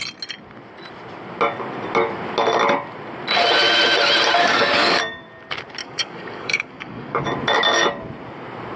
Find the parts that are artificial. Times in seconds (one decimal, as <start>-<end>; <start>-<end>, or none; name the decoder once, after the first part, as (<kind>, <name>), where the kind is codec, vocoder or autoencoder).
4.4-5.0 (codec, DAC); 5.8-7.2